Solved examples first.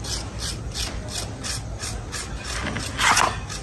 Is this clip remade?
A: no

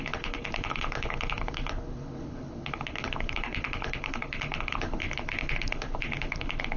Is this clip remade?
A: yes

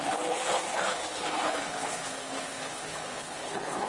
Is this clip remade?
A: yes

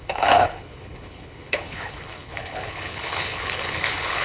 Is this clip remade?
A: yes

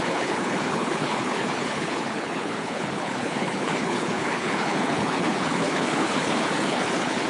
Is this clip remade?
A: yes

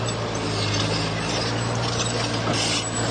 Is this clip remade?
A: no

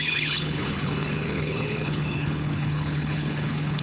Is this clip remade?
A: yes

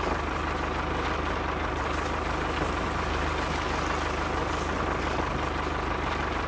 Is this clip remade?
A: no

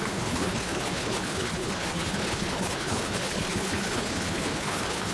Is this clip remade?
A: yes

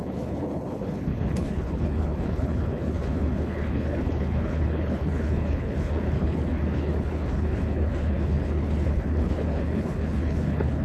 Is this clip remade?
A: yes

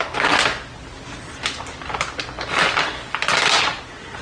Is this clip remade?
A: no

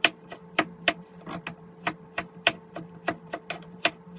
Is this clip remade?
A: no